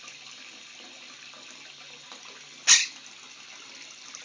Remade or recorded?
recorded